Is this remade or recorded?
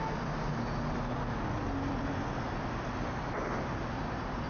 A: recorded